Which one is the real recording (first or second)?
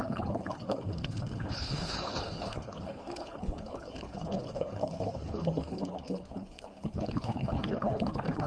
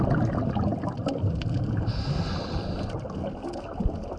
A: second